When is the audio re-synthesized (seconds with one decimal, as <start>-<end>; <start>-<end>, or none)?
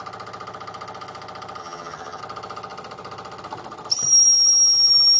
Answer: 1.6-2.2